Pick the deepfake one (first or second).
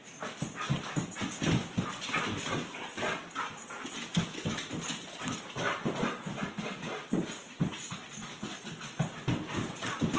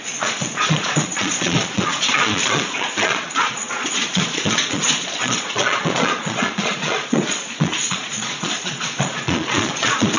second